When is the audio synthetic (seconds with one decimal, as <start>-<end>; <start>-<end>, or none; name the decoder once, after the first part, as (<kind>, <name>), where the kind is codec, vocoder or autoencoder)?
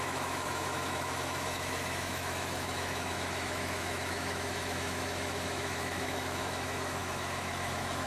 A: 0.0-8.1 (autoencoder, DAC-VAE)